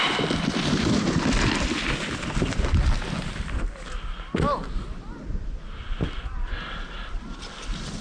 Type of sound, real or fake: real